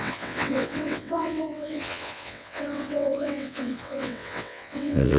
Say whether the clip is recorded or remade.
remade